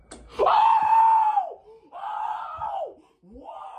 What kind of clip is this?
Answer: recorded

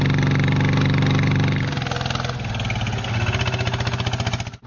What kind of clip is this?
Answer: recorded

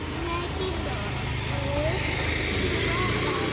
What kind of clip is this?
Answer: recorded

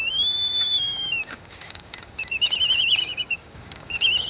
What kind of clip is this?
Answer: remade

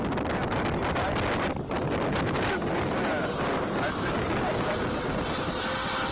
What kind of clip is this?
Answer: recorded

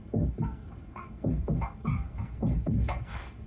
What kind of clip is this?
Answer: remade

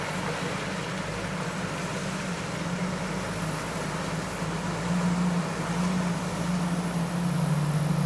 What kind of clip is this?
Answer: recorded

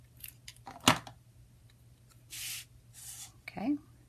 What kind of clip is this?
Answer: recorded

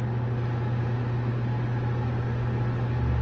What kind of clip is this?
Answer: recorded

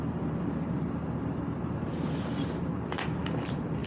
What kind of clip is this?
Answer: recorded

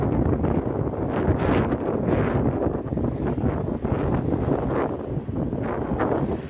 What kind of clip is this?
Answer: recorded